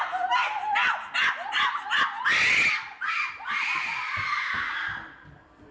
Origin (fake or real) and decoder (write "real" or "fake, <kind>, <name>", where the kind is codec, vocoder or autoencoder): real